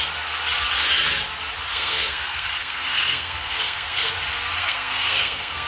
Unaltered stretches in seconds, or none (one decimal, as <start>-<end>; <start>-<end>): 0.0-1.7; 4.1-4.6